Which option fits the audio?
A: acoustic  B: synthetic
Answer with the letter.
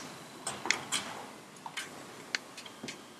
A